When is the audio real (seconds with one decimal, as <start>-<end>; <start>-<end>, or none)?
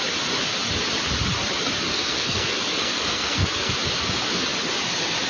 0.0-1.9; 3.7-5.3